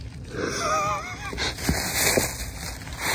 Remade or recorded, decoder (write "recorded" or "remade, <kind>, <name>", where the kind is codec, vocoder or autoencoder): recorded